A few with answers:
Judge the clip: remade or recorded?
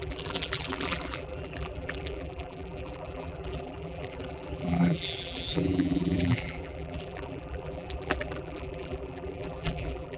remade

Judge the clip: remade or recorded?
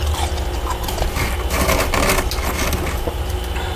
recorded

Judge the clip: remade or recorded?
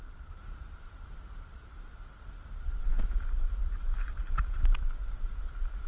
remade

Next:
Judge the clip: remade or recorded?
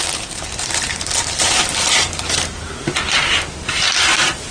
remade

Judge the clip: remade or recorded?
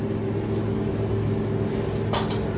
recorded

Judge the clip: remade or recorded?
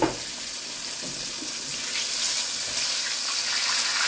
recorded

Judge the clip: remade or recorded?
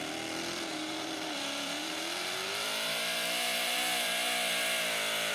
remade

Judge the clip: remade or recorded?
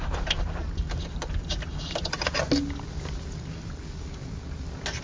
recorded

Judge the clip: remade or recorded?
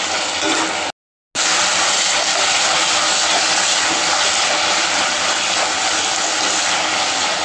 recorded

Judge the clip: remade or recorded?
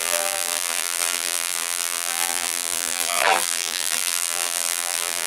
remade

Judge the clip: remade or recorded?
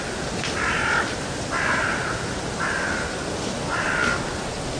remade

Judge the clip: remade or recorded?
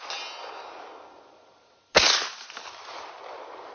recorded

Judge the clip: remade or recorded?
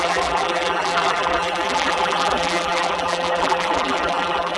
remade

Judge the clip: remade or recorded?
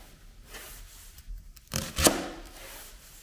recorded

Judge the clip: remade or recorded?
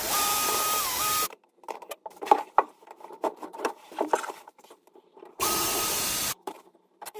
remade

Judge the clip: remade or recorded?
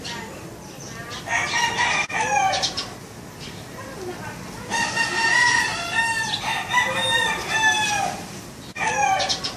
recorded